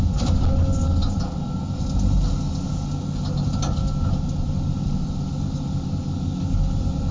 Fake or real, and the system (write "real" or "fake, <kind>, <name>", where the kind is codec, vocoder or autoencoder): real